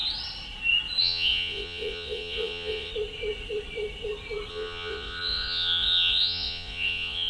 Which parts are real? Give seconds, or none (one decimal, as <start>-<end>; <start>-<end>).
0.0-1.0; 2.9-4.5